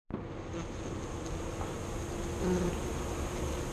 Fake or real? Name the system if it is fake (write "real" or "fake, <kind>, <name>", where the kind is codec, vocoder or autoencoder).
real